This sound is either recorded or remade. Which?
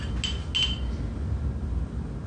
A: recorded